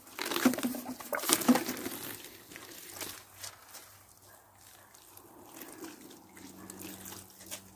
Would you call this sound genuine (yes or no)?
yes